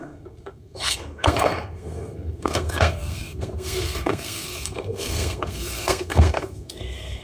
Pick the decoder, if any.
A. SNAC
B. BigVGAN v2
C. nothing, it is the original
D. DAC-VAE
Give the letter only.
A